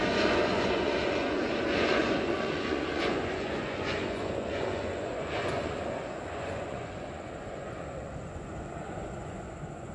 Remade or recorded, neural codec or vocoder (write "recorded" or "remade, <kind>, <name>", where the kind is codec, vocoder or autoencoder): remade, vocoder, Vocos